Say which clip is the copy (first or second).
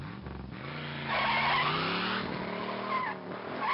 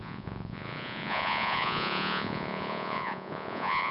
second